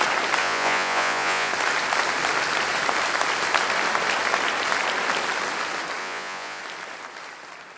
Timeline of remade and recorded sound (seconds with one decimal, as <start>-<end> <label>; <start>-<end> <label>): 0.0-0.4 recorded; 0.4-1.5 remade; 1.5-6.0 recorded; 6.0-6.6 remade; 6.6-7.8 recorded